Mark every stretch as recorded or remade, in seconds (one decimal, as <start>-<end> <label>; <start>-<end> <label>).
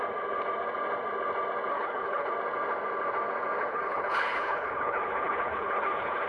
0.0-1.7 recorded; 1.7-2.3 remade; 2.3-3.6 recorded; 3.6-6.3 remade